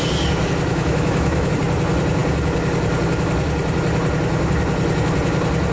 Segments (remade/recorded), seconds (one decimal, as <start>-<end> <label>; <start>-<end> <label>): 0.0-0.7 recorded; 0.7-1.5 remade; 1.5-5.7 recorded